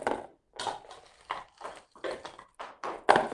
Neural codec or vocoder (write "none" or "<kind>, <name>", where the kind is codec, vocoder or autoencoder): none